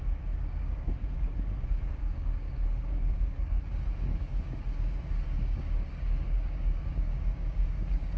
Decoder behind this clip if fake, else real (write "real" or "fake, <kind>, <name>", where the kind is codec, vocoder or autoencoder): fake, codec, DAC